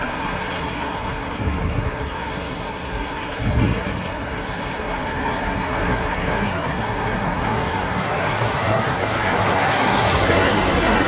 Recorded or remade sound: remade